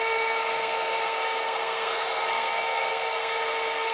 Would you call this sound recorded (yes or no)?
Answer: no